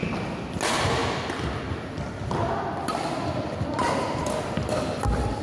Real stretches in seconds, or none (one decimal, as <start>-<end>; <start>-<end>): 0.0-5.4